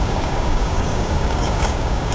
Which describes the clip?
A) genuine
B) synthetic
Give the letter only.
B